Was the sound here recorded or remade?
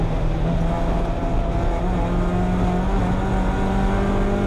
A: recorded